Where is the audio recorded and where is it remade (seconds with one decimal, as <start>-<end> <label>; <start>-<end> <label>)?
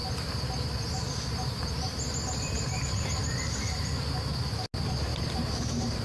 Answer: 0.0-3.6 remade; 3.6-5.1 recorded; 5.1-6.0 remade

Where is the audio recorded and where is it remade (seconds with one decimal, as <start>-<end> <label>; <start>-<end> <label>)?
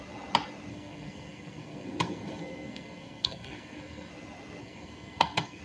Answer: 0.0-0.7 recorded; 0.7-4.1 remade; 4.1-4.6 recorded; 4.6-5.6 remade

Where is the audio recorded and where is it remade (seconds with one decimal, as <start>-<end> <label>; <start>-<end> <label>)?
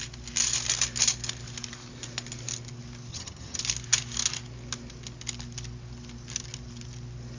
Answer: 0.0-3.1 recorded; 3.1-3.6 remade; 3.6-7.4 recorded